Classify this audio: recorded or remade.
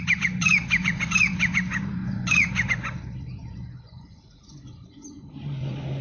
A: remade